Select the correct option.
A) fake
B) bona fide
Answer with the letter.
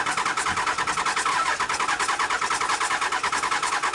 B